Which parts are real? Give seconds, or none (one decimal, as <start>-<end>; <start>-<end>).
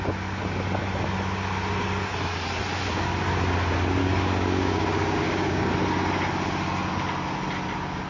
0.0-4.0; 5.7-8.1